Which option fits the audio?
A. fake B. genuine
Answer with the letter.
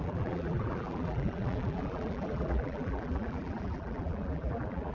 A